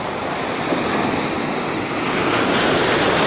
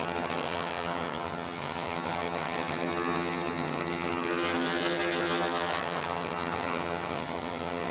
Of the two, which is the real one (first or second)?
first